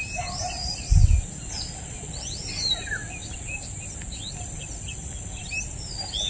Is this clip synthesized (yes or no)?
no